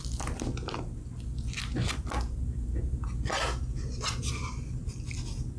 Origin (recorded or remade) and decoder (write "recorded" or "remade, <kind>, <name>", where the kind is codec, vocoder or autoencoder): recorded